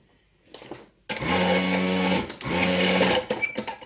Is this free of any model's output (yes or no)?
yes